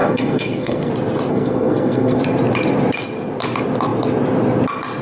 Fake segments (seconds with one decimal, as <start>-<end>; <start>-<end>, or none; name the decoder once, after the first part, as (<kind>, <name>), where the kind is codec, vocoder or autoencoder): 0.0-0.9 (codec, SNAC); 1.3-2.2